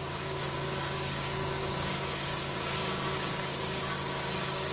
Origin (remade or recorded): remade